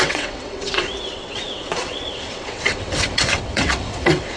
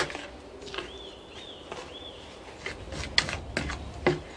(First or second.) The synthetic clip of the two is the first